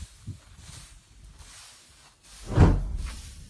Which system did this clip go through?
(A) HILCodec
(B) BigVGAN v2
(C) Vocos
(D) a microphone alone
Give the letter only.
D